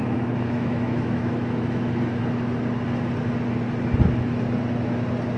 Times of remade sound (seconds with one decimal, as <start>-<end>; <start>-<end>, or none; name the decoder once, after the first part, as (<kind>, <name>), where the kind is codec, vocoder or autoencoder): 0.0-2.2 (autoencoder, DAC-VAE)